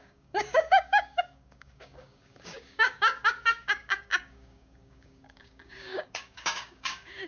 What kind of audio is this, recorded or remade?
remade